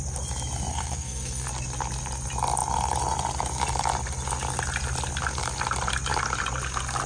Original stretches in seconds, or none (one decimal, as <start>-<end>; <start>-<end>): 0.0-0.7; 1.5-7.1